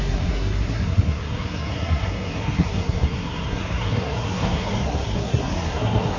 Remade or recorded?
remade